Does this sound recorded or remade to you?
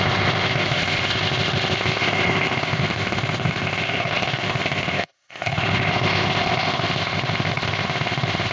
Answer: remade